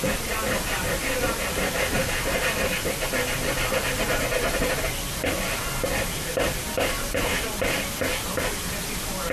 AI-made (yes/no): no